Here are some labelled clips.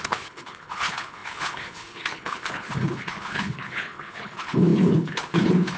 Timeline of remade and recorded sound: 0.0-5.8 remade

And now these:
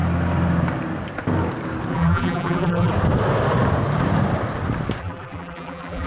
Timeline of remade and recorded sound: 0.0-1.9 recorded; 1.9-2.9 remade; 2.9-5.0 recorded; 5.0-6.1 remade

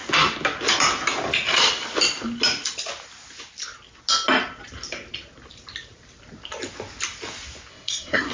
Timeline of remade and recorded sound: 0.0-7.7 recorded; 7.7-8.3 remade

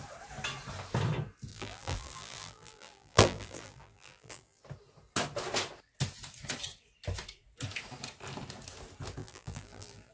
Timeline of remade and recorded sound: 0.0-1.5 recorded; 1.5-4.6 remade; 4.6-9.2 recorded; 9.2-10.1 remade

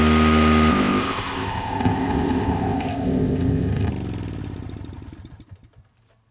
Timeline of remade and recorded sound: 0.0-0.7 recorded; 0.7-3.9 remade; 3.9-6.3 recorded

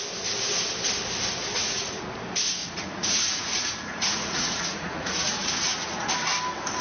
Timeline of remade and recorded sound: 0.0-1.6 recorded; 1.6-2.2 remade; 2.2-2.6 recorded; 2.6-6.1 remade; 6.1-6.8 recorded

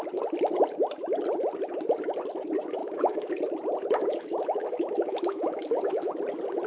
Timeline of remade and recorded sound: 0.0-2.8 recorded; 2.8-3.3 remade; 3.3-4.0 recorded; 4.0-6.1 remade; 6.1-6.7 recorded

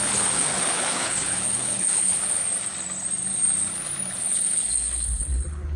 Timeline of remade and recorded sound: 0.0-2.4 remade; 2.4-4.2 recorded; 4.2-5.8 remade